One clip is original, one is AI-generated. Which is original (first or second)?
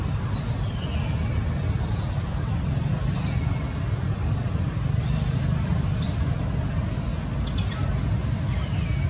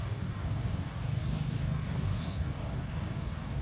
first